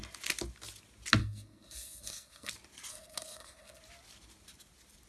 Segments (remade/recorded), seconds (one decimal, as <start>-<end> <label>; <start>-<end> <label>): 0.0-1.2 recorded; 1.2-2.5 remade; 2.5-2.9 recorded; 2.9-3.8 remade; 3.8-5.1 recorded